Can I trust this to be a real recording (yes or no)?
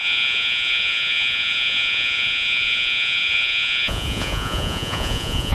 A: no